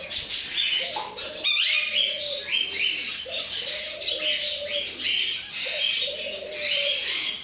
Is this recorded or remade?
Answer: recorded